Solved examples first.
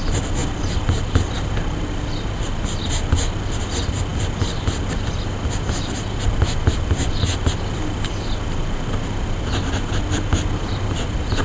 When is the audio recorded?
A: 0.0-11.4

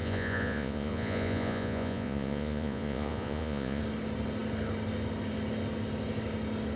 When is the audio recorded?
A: 3.8-6.8

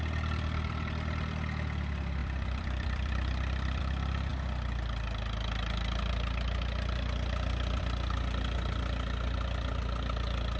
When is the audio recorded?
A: 0.0-2.2; 3.8-10.6